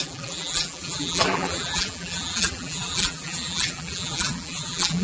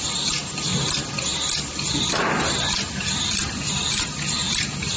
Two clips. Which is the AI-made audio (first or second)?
first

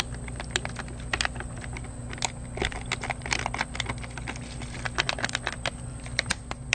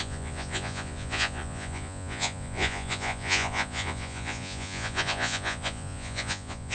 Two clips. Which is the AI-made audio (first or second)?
second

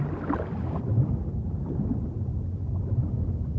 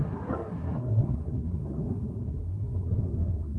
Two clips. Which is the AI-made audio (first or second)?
second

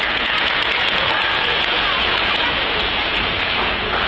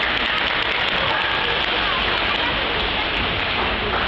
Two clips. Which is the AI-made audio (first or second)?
first